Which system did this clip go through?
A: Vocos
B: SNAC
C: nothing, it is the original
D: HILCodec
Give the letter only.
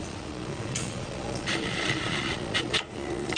A